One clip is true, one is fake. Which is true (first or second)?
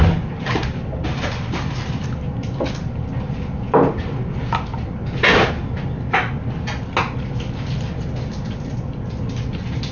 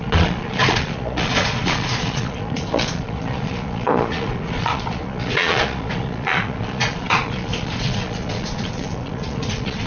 first